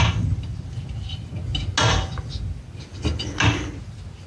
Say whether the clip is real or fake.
real